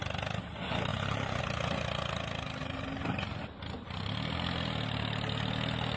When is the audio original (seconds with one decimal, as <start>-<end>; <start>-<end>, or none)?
0.0-0.9; 1.4-6.0